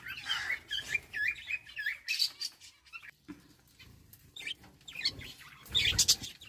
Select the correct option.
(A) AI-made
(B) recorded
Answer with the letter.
B